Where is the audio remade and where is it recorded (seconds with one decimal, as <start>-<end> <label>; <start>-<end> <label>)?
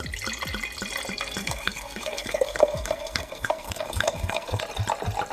0.0-1.4 recorded; 1.4-4.6 remade; 4.6-5.3 recorded